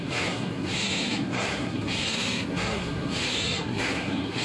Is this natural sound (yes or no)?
no